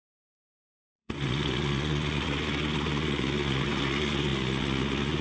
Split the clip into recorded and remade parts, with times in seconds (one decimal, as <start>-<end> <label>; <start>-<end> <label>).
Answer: 0.0-5.2 remade